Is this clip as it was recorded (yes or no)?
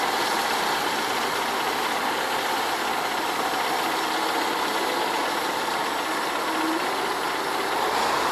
yes